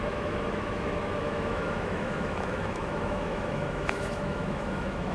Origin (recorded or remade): remade